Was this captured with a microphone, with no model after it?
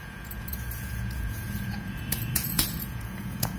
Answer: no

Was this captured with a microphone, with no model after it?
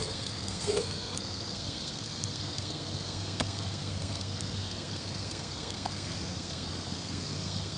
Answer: no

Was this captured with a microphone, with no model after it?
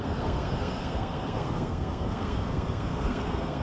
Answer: no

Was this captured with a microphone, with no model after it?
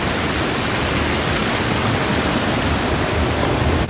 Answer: yes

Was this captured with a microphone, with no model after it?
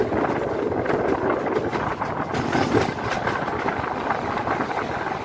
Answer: yes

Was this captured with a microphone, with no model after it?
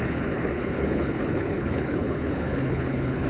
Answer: no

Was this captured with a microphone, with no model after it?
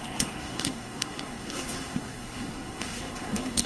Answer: no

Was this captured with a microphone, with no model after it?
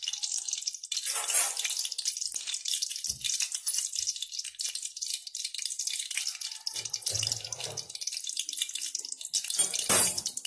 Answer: yes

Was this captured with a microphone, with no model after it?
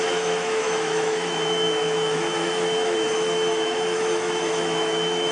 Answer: no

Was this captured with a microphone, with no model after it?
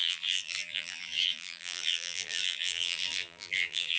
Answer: no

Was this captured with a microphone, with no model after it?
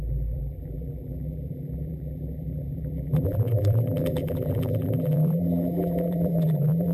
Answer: no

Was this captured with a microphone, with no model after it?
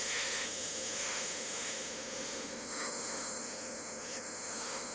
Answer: no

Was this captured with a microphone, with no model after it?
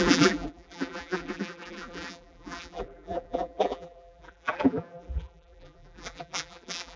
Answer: no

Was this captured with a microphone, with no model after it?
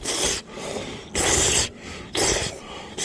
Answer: yes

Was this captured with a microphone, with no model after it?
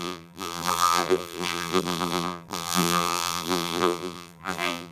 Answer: no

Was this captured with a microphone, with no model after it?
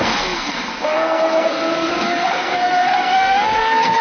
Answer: no